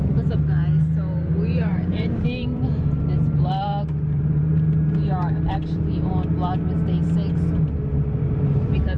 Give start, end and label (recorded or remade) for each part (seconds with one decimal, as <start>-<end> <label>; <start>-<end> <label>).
0.0-1.7 recorded; 1.7-6.1 remade; 6.1-9.0 recorded